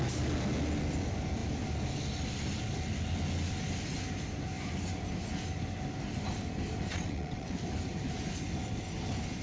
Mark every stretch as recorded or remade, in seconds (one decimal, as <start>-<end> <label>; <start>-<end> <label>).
0.0-6.9 recorded; 6.9-7.6 remade; 7.6-9.4 recorded